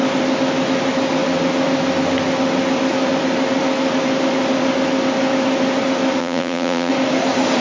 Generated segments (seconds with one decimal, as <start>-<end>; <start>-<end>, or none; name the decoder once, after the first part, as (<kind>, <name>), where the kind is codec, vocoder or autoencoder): 6.2-6.9 (vocoder, Vocos)